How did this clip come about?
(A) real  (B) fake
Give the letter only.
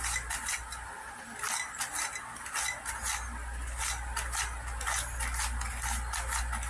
A